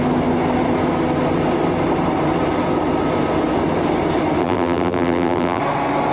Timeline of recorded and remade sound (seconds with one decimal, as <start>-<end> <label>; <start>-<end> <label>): 0.0-4.4 recorded; 4.4-5.6 remade; 5.6-6.1 recorded